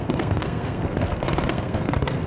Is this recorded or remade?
remade